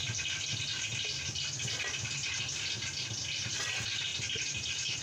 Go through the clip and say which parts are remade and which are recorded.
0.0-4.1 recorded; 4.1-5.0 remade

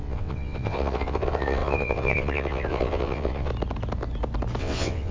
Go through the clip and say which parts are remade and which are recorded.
0.0-3.5 remade; 3.5-4.6 recorded; 4.6-5.1 remade

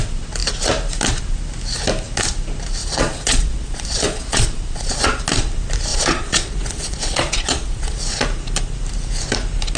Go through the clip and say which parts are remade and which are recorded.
0.0-2.8 recorded; 2.8-5.2 remade; 5.2-5.9 recorded; 5.9-8.0 remade; 8.0-9.8 recorded

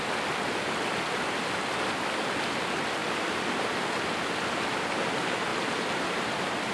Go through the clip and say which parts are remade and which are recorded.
0.0-5.5 recorded; 5.5-6.7 remade

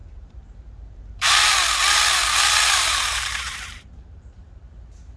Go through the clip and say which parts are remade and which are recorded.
0.0-1.5 remade; 1.5-2.9 recorded; 2.9-4.6 remade; 4.6-5.2 recorded

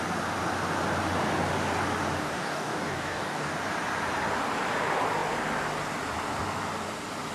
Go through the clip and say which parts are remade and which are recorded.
0.0-2.2 recorded; 2.2-3.5 remade; 3.5-7.3 recorded